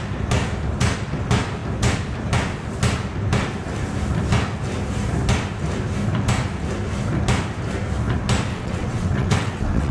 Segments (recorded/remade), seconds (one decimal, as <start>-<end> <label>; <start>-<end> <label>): 0.0-8.5 recorded; 8.5-9.9 remade